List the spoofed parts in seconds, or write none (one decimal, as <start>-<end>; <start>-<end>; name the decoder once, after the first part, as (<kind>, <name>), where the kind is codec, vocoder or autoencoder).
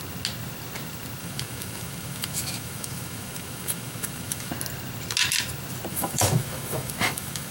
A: 1.2-4.5 (autoencoder, DAC-VAE); 5.9-7.5